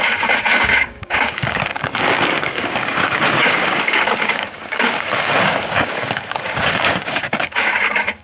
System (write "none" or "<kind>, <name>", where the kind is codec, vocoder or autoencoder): codec, DAC